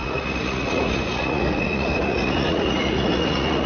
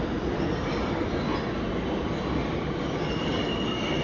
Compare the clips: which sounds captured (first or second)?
second